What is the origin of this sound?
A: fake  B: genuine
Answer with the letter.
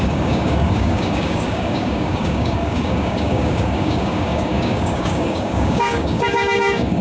A